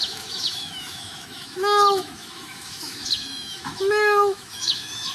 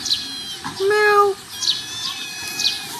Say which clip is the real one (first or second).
second